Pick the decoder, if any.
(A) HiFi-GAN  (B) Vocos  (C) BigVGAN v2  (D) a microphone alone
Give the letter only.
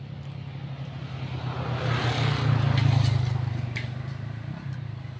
D